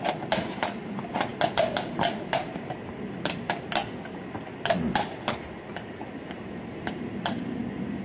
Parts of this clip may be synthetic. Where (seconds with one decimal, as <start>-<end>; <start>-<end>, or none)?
none